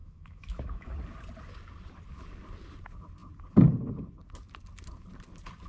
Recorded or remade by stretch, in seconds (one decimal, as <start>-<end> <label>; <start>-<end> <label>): 0.0-0.9 remade; 0.9-5.7 recorded